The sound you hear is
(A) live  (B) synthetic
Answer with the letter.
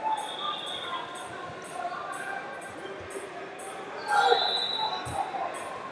A